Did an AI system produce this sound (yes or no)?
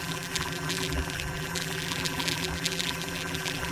yes